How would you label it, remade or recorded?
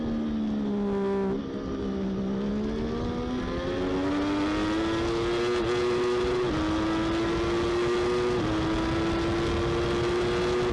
recorded